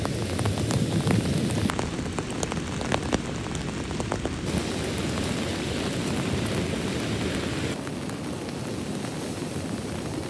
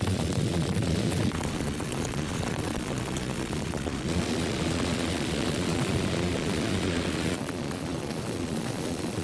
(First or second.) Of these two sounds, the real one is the first